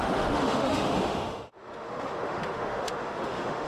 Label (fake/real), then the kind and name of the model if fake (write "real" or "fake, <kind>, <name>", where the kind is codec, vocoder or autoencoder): fake, autoencoder, DAC-VAE